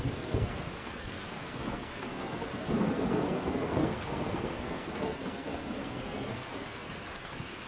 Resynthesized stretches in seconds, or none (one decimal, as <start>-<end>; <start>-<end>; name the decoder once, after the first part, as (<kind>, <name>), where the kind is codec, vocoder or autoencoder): 0.0-7.7 (codec, SNAC)